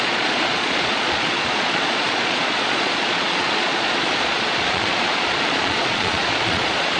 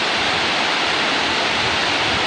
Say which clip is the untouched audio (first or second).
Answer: second